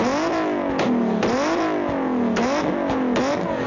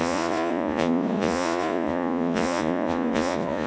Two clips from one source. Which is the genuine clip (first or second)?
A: first